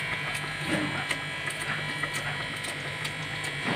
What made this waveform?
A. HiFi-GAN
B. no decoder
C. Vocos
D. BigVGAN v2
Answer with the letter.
C